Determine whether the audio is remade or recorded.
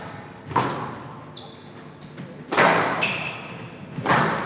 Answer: recorded